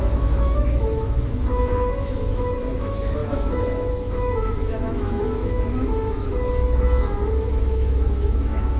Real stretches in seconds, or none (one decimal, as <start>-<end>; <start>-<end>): 6.3-7.3